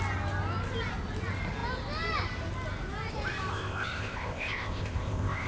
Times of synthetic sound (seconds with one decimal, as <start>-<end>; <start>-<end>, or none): 3.5-5.5